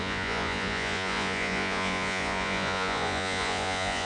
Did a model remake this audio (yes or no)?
yes